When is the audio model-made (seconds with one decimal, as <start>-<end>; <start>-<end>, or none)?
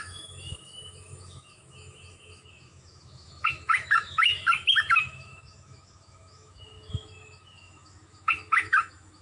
0.0-9.2